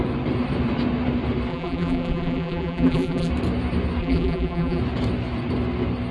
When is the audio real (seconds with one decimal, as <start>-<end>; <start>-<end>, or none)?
0.0-1.5; 3.3-4.0; 4.8-6.1